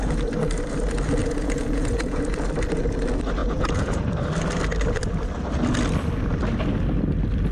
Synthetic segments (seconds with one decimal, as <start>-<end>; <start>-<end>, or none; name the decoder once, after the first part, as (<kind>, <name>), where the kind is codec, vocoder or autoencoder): 1.2-2.2 (vocoder, Vocos); 3.4-4.0

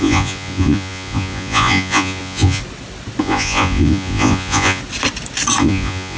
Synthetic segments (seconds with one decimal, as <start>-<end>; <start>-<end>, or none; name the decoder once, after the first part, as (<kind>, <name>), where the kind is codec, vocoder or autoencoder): 0.0-2.6 (vocoder, Vocos); 3.2-4.8; 5.6-6.2

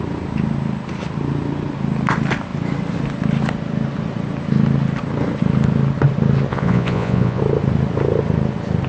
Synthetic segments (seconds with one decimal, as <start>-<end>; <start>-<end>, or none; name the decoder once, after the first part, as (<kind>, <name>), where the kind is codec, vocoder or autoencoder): 6.5-7.4 (vocoder, Vocos)